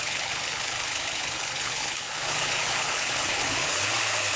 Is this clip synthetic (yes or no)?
yes